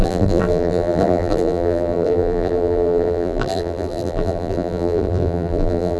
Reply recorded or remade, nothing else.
remade